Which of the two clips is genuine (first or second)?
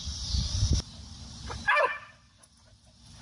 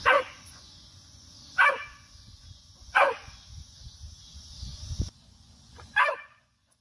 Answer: first